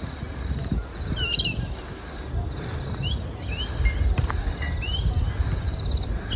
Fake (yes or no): no